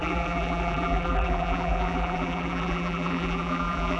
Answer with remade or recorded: remade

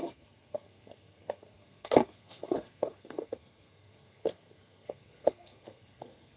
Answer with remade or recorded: remade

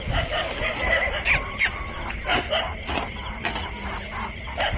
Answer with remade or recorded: recorded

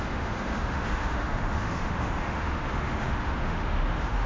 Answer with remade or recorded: remade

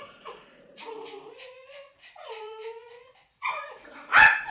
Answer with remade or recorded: remade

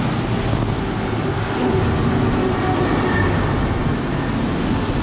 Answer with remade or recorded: recorded